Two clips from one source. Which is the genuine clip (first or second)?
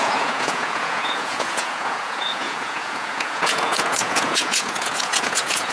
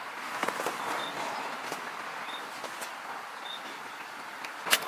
second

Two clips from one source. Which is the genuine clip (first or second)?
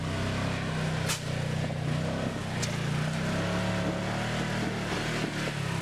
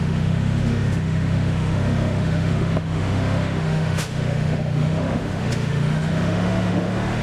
first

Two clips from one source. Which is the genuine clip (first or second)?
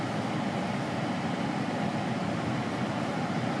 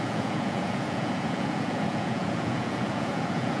first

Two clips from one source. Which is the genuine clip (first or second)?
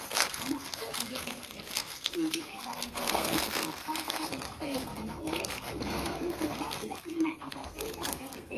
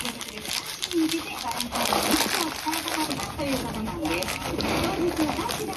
second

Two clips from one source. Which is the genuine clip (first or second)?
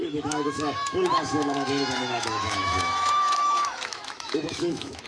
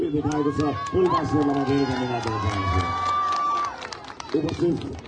second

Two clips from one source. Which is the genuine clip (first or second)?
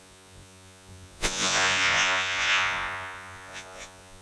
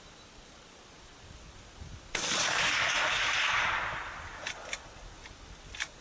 second